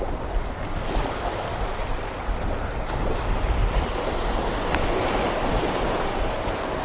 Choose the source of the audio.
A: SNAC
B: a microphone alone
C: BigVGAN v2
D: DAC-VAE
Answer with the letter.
B